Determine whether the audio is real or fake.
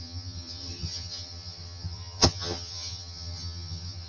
fake